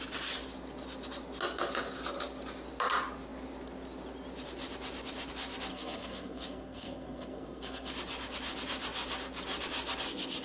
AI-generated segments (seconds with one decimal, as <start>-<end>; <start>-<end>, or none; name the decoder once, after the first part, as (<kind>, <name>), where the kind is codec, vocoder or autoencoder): 5.7-7.9 (codec, SNAC)